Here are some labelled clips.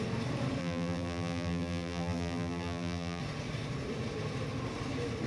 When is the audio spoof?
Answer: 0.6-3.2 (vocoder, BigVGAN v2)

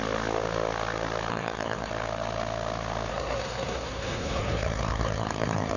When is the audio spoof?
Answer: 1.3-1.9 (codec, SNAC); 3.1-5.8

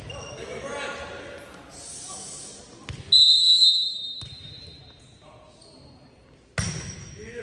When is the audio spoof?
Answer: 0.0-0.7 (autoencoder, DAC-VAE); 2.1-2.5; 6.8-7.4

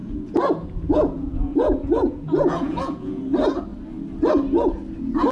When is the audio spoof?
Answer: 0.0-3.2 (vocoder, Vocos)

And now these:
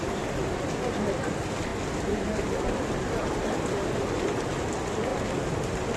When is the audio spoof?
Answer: none

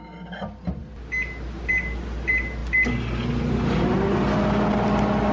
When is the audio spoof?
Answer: none

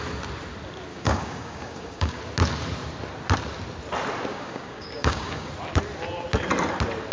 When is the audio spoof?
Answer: 0.9-2.2 (codec, DAC); 4.3-5.5